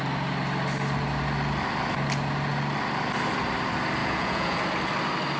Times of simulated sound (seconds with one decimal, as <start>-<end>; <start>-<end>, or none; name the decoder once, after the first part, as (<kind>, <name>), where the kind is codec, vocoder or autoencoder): 4.0-4.6 (vocoder, Vocos)